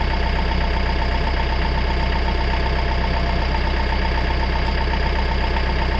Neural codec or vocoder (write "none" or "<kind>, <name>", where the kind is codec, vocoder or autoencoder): none